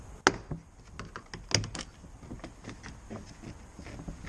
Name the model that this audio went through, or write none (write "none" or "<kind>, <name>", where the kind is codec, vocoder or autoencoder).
none